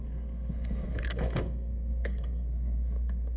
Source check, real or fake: fake